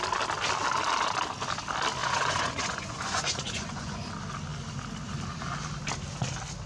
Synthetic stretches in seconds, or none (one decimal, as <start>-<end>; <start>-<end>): 2.0-4.1